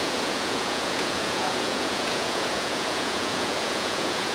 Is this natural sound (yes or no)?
no